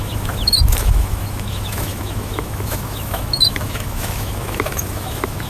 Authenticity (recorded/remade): remade